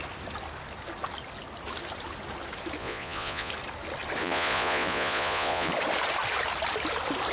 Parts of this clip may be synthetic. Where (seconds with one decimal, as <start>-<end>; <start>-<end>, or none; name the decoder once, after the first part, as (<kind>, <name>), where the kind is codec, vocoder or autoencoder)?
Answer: 2.8-3.5 (vocoder, Vocos); 4.2-5.7